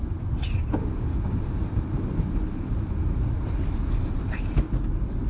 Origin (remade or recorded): recorded